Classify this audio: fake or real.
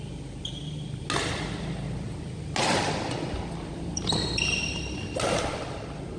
real